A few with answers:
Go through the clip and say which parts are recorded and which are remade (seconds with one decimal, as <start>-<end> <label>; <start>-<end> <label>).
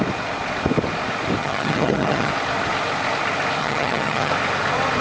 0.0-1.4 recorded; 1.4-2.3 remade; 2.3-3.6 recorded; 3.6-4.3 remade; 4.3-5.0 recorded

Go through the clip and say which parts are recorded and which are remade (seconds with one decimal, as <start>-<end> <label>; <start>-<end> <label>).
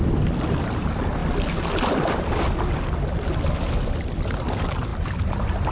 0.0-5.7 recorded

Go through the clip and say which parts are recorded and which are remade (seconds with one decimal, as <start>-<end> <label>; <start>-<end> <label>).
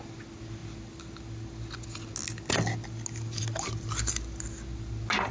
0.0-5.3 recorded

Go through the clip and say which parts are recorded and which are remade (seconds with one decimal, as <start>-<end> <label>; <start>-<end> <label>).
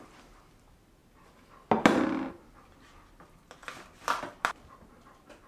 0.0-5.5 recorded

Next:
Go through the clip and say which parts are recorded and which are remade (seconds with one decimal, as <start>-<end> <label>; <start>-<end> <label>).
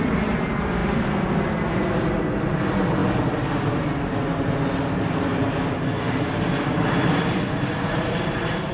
0.0-8.7 recorded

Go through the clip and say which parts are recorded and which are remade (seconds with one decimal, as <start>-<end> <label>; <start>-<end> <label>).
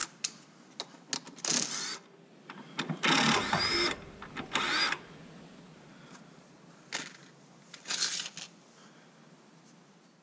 0.0-10.2 recorded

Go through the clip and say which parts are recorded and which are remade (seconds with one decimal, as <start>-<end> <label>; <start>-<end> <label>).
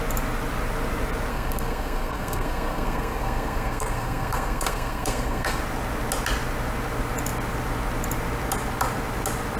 0.0-1.3 recorded; 1.3-5.6 remade; 5.6-9.6 recorded